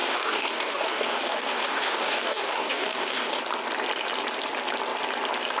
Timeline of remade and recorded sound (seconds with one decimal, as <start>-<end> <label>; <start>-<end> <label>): 0.0-3.4 remade; 3.4-5.6 recorded